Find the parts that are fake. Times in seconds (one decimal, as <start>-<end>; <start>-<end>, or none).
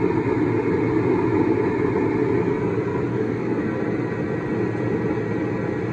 3.1-3.6